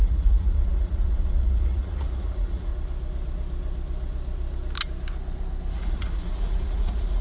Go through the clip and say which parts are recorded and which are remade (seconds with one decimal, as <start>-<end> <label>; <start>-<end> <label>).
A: 0.0-2.7 remade; 2.7-5.7 recorded; 5.7-7.2 remade